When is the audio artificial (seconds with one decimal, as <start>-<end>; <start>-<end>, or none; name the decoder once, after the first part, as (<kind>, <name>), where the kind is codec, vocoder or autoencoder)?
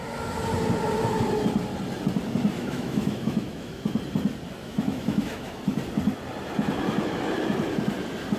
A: 2.6-3.8 (autoencoder, DAC-VAE); 4.6-5.6